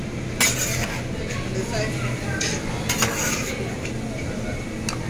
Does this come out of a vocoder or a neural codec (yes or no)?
no